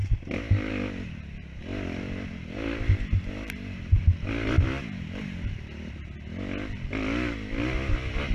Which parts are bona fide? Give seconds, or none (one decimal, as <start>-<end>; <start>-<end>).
0.7-1.7; 5.9-8.3